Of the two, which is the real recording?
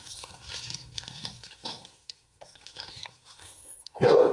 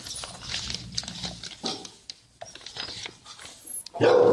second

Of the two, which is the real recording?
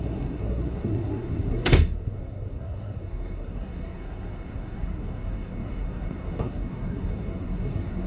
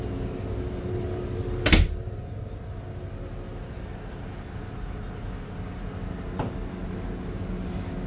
second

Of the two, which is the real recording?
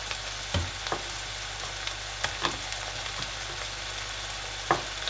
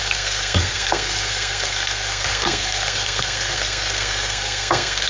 first